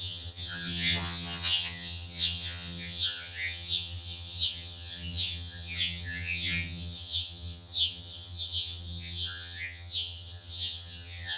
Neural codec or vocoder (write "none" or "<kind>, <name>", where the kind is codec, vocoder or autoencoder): vocoder, HiFi-GAN